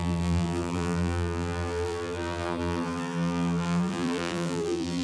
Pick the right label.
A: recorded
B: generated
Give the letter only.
B